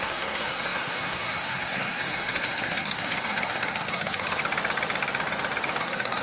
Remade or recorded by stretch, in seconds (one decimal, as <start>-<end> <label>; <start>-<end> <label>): 0.0-4.4 remade; 4.4-5.8 recorded; 5.8-6.2 remade